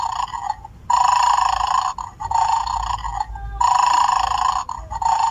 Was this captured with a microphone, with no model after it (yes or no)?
yes